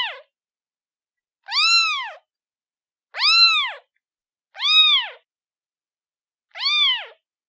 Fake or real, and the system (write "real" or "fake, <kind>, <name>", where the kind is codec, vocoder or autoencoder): real